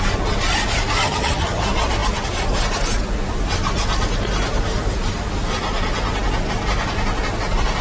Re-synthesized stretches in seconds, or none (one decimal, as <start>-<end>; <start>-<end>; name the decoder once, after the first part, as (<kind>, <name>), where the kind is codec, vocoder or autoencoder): 1.0-1.6 (vocoder, HiFi-GAN)